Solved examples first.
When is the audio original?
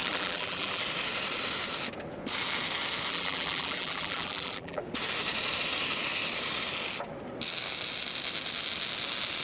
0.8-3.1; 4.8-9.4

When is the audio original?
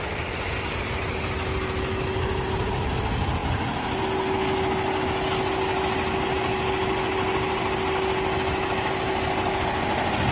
0.0-10.3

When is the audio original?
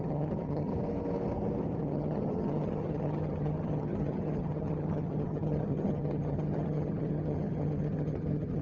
0.7-1.8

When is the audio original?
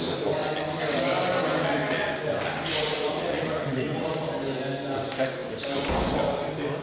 0.0-2.8; 4.1-6.8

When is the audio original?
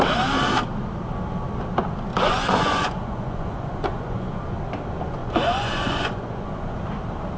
0.0-2.1; 4.4-5.2; 6.8-7.4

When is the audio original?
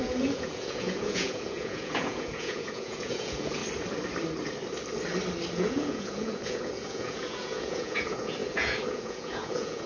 3.6-5.5